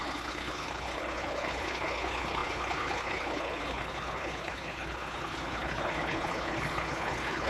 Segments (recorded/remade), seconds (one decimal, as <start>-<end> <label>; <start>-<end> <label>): 0.0-7.5 remade